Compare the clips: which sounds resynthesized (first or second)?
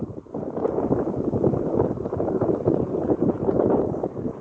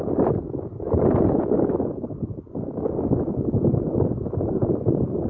first